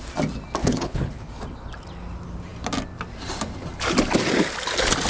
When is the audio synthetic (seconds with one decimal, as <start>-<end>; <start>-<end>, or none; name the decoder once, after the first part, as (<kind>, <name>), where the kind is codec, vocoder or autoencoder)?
0.6-1.3 (codec, HILCodec)